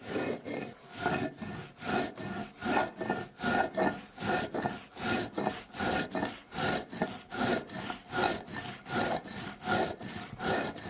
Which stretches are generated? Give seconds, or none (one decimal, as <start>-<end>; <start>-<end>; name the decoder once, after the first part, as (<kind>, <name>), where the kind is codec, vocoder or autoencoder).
none